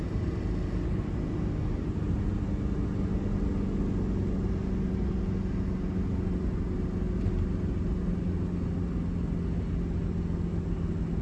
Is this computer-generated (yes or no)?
no